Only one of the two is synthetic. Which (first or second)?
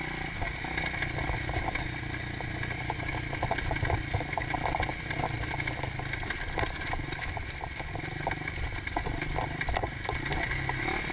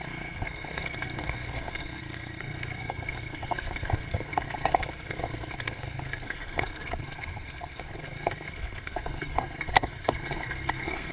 second